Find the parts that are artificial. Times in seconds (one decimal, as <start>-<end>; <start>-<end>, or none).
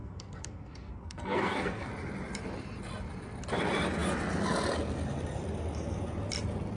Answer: 0.0-1.9